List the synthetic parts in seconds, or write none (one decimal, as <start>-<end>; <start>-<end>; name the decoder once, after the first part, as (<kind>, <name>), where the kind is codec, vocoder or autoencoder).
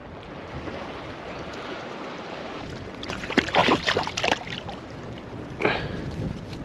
0.5-3.6 (vocoder, BigVGAN v2); 5.3-6.6